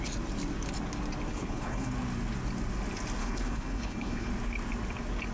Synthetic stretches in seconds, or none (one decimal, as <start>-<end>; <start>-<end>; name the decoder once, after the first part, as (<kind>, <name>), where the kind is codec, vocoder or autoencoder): 1.3-1.9 (codec, HILCodec); 3.2-4.3